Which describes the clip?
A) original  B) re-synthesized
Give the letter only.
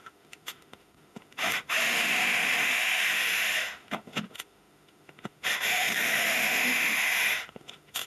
B